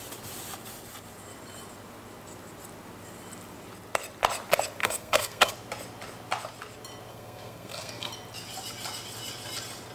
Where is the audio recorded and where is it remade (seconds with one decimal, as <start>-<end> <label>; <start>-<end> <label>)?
0.0-4.8 recorded; 4.8-5.5 remade; 5.5-7.1 recorded; 7.1-8.1 remade; 8.1-9.9 recorded